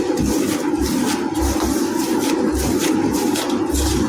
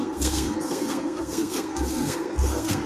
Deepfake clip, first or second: second